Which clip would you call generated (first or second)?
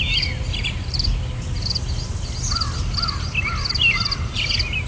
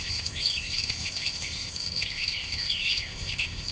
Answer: second